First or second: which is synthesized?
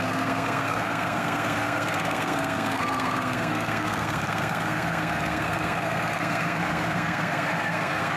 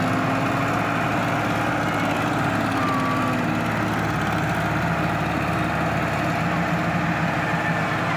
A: first